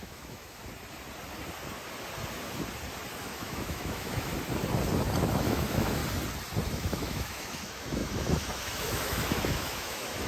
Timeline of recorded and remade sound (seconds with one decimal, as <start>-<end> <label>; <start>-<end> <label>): 0.0-0.6 remade; 0.6-3.2 recorded; 3.2-4.3 remade; 4.3-5.2 recorded; 5.2-6.0 remade; 6.0-6.7 recorded; 6.7-10.3 remade